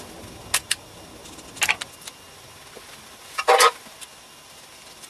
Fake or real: real